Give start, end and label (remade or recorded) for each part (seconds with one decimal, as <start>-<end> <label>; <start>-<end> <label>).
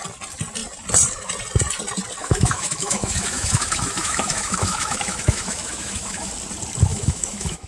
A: 0.0-2.2 recorded; 2.2-6.3 remade; 6.3-6.9 recorded; 6.9-7.7 remade